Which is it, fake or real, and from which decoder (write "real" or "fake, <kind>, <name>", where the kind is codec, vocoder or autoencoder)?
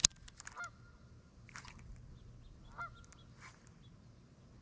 real